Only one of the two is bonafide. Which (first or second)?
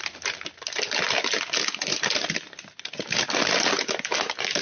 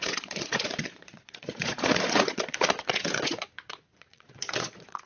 first